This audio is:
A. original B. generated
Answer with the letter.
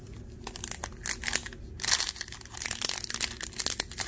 A